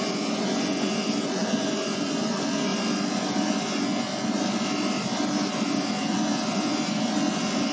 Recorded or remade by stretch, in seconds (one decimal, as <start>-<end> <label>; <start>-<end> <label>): 0.0-2.7 remade; 2.7-3.4 recorded; 3.4-4.1 remade; 4.1-5.5 recorded; 5.5-7.7 remade